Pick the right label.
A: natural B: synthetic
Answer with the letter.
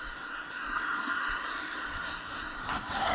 B